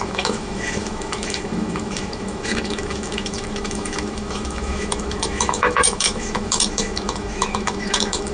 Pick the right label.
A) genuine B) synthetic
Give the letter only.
B